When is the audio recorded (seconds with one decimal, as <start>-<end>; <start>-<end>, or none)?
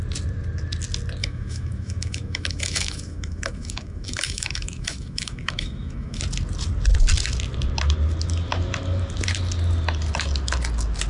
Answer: 0.0-1.2; 6.2-11.1